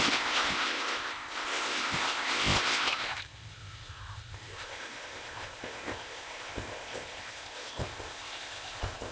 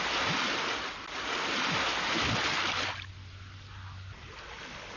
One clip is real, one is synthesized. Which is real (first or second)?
second